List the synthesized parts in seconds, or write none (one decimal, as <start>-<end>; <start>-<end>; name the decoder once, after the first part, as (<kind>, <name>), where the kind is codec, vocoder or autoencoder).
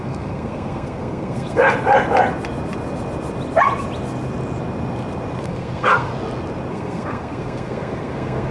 0.0-1.6 (codec, SNAC); 5.4-6.1; 6.7-8.5